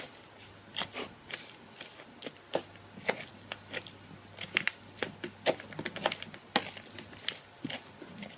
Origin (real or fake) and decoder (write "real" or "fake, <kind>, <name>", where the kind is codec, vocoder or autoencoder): real